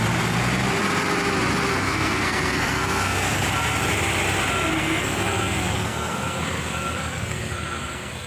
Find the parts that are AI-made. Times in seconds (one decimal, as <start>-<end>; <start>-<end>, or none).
1.7-3.4; 4.7-8.3